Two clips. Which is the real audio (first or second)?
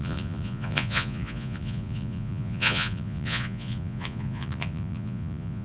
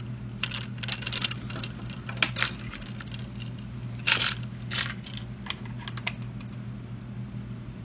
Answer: second